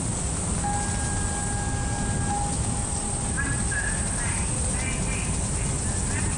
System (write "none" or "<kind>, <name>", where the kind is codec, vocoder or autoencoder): none